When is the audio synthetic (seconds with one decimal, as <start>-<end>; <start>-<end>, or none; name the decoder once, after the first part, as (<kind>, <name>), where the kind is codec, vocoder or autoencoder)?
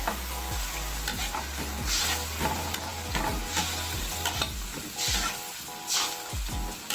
none